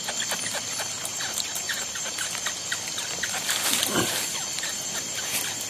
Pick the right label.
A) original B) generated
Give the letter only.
A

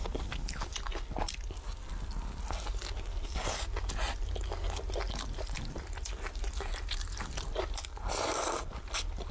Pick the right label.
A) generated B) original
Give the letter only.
B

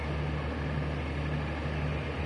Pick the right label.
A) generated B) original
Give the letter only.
B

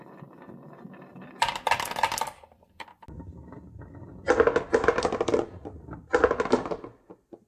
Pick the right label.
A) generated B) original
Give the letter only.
B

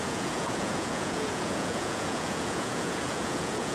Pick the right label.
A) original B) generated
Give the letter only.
B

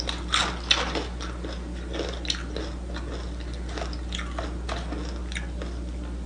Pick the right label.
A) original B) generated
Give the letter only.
A